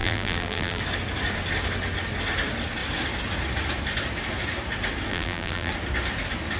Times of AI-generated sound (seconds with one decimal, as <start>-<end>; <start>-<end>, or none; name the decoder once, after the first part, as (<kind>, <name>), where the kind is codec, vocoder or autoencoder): 0.0-0.8 (vocoder, BigVGAN v2); 5.1-5.7